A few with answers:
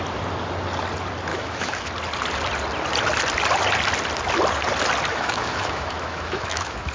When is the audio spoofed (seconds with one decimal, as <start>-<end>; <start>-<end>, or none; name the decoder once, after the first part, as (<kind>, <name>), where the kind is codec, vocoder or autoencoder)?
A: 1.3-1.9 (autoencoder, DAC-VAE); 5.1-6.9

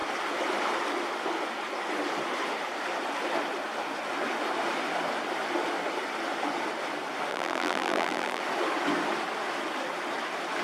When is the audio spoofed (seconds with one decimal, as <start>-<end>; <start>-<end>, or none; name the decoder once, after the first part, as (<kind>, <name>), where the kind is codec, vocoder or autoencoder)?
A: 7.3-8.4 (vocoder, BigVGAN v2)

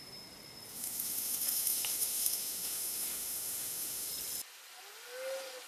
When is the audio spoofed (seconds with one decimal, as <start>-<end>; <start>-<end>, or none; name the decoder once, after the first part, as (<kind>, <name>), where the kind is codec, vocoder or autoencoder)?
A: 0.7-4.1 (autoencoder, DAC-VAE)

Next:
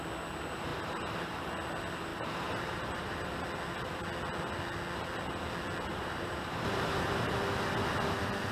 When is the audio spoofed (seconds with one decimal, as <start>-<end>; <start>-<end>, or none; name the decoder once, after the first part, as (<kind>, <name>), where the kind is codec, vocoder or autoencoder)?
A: 0.7-1.5 (vocoder, BigVGAN v2); 2.1-3.3; 5.9-7.3

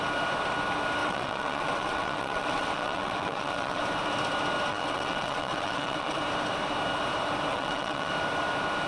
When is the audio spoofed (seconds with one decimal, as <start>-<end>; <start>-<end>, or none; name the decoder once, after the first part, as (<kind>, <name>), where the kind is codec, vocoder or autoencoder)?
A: 1.0-3.8 (vocoder, WaveNeXt); 4.7-6.2; 7.5-8.1

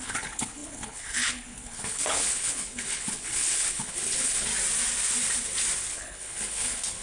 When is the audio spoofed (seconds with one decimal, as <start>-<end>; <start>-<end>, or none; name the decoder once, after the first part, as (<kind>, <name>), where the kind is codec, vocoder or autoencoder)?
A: 0.0-4.5 (codec, HILCodec); 5.9-7.0

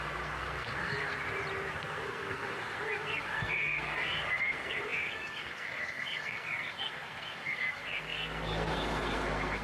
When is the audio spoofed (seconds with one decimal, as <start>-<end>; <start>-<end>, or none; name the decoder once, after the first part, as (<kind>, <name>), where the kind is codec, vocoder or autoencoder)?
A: 0.0-1.2 (codec, SNAC); 1.7-9.6

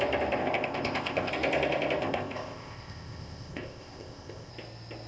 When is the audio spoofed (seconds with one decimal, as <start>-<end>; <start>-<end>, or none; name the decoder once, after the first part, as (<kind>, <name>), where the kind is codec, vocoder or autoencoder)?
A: 0.4-1.3 (codec, ZipCodec); 2.0-4.5